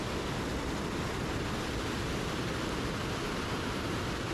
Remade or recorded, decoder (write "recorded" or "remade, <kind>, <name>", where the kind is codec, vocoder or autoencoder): recorded